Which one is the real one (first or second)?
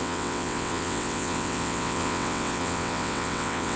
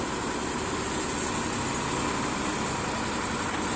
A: second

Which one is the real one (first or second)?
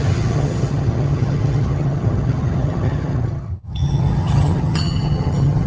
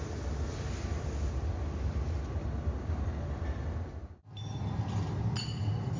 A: second